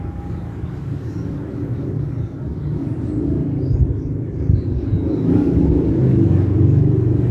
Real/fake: fake